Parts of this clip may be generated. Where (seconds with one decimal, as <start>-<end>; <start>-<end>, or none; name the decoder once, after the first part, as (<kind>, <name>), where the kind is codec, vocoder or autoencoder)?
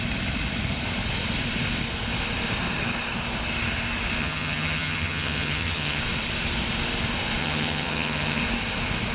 4.2-6.0 (vocoder, HiFi-GAN); 7.4-8.4